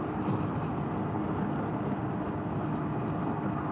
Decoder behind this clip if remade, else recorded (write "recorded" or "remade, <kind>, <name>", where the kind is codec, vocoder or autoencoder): recorded